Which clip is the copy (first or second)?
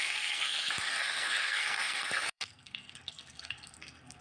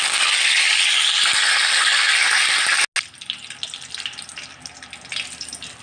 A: first